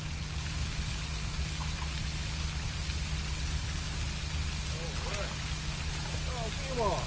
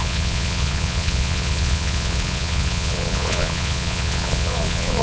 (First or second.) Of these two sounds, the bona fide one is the first